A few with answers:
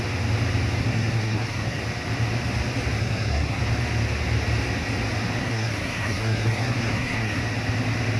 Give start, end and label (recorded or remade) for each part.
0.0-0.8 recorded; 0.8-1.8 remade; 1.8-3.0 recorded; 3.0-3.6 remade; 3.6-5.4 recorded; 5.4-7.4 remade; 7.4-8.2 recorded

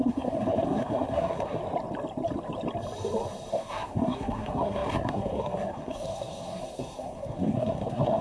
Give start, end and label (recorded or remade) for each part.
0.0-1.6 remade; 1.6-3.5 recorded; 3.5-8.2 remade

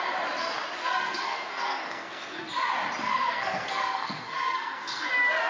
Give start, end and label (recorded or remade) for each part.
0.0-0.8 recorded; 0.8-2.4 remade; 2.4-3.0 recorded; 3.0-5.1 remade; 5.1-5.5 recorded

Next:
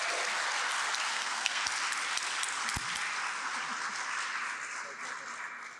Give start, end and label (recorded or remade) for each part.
0.0-1.1 recorded; 1.1-1.6 remade; 1.6-5.8 recorded

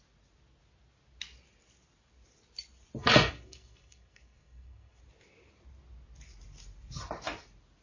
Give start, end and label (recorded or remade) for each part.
0.0-3.0 recorded; 3.0-5.0 remade; 5.0-7.8 recorded